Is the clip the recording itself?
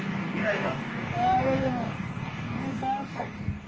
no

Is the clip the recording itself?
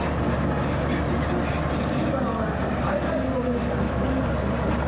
yes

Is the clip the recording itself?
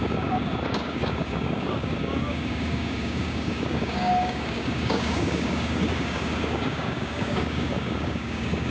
no